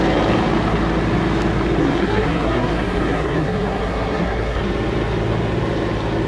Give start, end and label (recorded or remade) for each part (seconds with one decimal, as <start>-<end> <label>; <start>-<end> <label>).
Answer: 0.0-1.8 recorded; 1.8-4.6 remade; 4.6-6.3 recorded